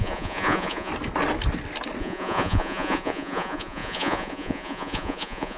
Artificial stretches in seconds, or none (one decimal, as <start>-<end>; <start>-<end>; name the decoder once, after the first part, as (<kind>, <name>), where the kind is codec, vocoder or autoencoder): 0.0-0.9 (vocoder, Vocos); 2.0-5.6